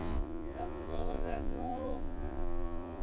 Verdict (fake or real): fake